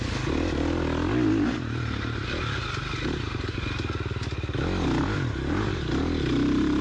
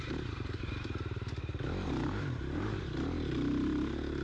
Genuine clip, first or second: first